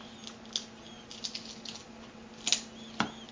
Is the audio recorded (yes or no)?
yes